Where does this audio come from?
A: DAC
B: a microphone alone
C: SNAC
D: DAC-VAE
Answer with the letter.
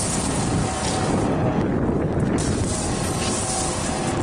B